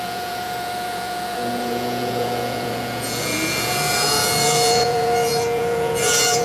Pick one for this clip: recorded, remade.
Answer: remade